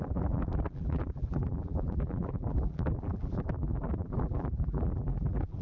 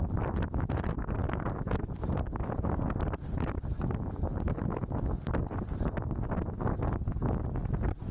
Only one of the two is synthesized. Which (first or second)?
first